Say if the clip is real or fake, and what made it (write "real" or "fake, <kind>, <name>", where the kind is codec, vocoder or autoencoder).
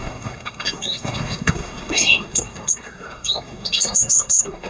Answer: fake, codec, SNAC